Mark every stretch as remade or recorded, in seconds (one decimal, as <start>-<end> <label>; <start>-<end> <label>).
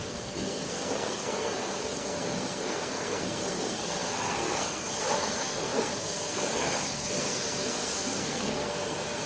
0.0-9.3 remade